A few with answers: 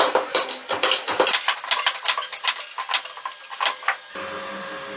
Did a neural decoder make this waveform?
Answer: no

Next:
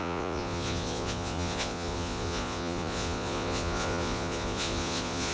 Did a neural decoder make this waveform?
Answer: yes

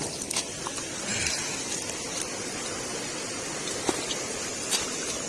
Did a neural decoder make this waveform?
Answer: no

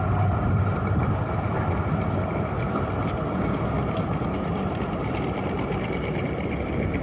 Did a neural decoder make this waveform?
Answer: no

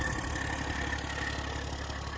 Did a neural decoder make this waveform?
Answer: no